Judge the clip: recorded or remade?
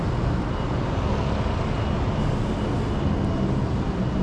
recorded